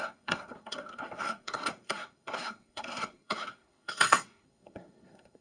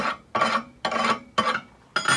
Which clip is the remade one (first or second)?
first